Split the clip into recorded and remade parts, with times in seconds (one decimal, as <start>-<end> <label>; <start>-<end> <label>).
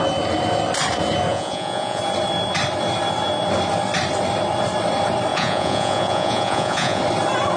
0.0-1.3 recorded; 1.3-2.0 remade; 2.0-5.3 recorded; 5.3-7.0 remade; 7.0-7.6 recorded